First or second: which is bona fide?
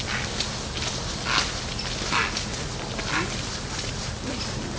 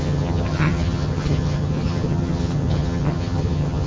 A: first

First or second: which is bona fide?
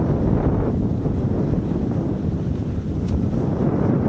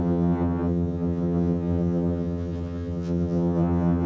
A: first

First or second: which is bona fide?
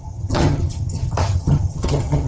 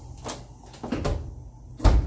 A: second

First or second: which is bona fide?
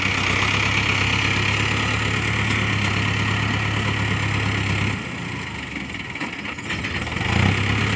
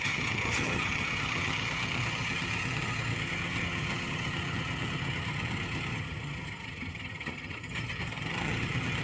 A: first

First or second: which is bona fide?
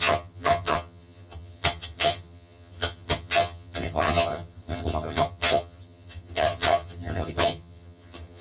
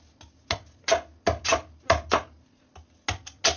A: second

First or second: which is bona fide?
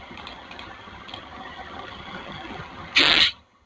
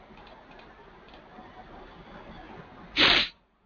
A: second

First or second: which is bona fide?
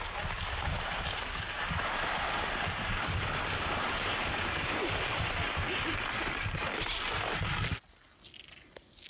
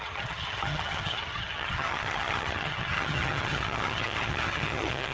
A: first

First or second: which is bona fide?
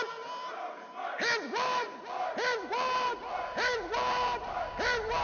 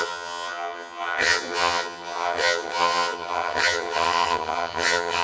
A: first